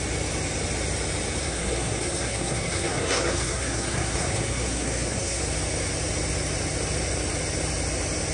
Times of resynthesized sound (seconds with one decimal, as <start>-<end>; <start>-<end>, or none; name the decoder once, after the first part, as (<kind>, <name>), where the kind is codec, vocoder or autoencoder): 1.4-5.4 (codec, SNAC)